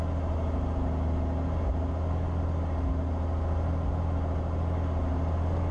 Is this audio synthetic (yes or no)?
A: no